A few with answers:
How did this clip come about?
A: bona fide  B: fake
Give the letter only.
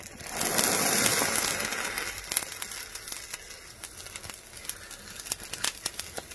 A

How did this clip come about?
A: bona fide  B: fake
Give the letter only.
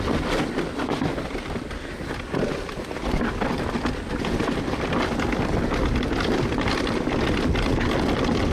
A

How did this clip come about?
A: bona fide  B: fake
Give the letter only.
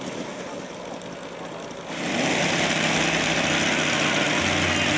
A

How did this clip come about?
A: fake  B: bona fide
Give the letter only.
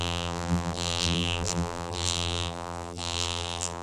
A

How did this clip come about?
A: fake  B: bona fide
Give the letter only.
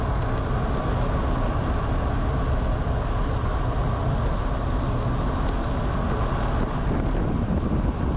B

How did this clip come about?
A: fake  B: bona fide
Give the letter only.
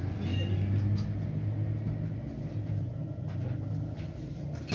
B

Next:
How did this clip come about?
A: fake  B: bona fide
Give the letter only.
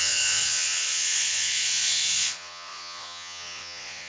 A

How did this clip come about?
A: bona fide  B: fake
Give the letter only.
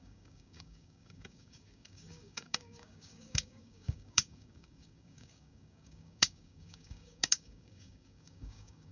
B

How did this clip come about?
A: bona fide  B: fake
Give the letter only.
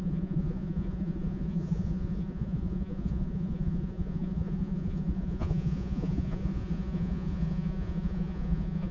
B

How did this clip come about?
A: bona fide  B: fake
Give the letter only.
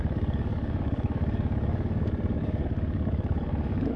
B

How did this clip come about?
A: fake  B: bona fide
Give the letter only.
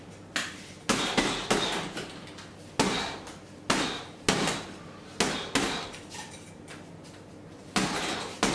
B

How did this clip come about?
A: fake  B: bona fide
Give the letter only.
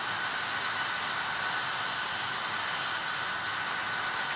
B